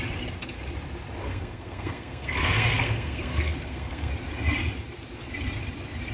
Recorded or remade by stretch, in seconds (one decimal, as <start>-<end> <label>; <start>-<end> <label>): 0.0-1.2 recorded; 1.2-4.1 remade; 4.1-6.1 recorded